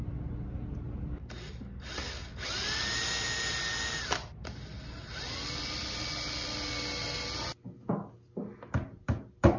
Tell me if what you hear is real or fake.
real